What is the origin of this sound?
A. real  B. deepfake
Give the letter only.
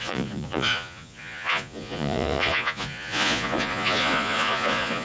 B